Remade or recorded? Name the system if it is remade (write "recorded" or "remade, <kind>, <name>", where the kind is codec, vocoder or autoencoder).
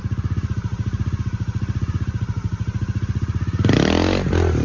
recorded